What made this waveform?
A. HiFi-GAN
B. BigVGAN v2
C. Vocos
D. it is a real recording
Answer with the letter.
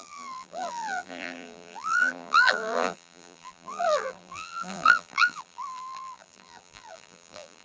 B